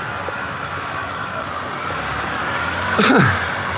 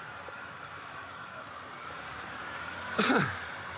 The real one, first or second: first